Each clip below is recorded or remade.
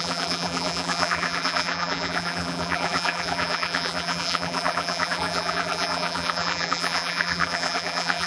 remade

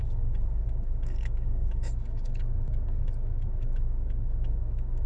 remade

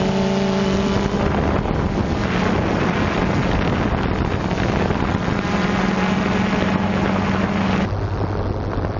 recorded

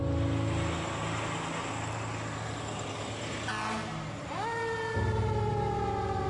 recorded